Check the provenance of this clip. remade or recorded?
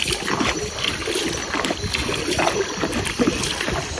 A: recorded